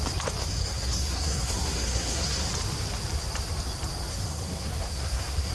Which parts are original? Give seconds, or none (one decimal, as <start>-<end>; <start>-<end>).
0.0-0.4; 2.5-4.1